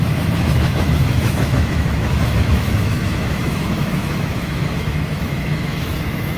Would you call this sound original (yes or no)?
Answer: no